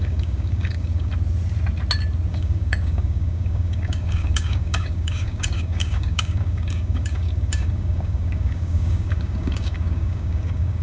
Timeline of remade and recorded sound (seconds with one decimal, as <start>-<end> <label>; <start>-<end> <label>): 0.0-1.1 remade; 1.1-2.3 recorded; 2.3-10.8 remade